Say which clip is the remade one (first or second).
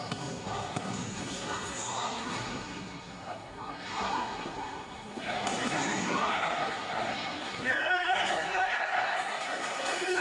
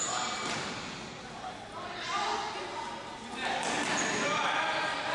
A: first